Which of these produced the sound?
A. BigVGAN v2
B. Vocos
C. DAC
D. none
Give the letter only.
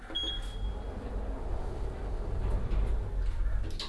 D